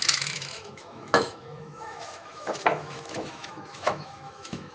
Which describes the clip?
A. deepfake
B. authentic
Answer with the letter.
A